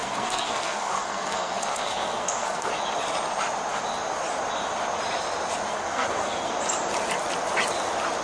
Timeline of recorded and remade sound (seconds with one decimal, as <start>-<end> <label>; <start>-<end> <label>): 0.0-2.7 remade; 2.7-5.7 recorded; 5.7-6.5 remade; 6.5-8.2 recorded